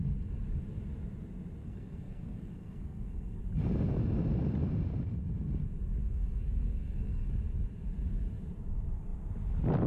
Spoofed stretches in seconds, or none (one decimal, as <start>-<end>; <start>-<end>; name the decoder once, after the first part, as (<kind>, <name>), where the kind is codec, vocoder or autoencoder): 1.6-3.4 (codec, SNAC); 6.0-7.3